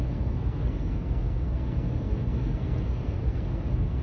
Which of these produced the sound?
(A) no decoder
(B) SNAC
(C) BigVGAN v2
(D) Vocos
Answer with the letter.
B